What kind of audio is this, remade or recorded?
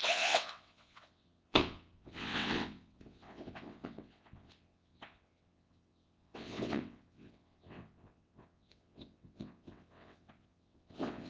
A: remade